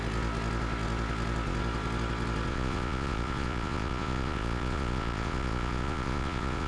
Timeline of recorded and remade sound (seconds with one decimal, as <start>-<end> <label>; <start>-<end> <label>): 0.0-2.5 recorded; 2.5-6.7 remade